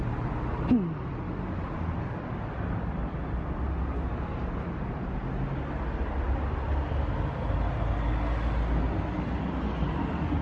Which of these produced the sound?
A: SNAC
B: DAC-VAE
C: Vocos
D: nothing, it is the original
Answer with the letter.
D